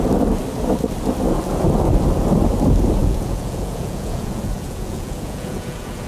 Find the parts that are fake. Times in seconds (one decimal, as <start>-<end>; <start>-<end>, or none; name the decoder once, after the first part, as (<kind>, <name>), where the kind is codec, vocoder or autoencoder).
3.0-6.1 (vocoder, Vocos)